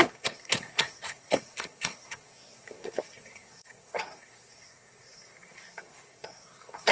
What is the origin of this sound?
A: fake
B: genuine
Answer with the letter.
A